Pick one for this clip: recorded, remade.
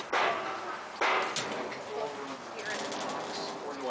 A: recorded